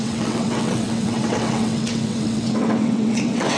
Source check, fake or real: fake